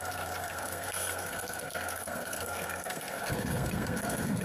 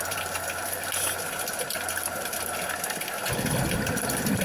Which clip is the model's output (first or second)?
first